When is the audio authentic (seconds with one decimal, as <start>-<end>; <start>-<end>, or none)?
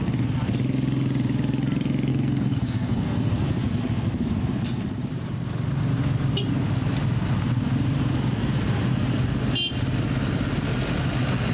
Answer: 0.0-2.1; 3.3-11.5